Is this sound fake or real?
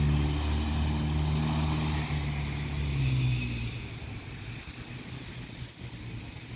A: real